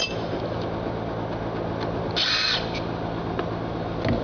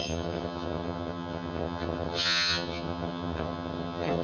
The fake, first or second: second